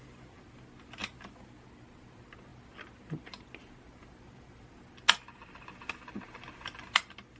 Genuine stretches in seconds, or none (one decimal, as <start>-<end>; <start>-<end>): 0.0-7.4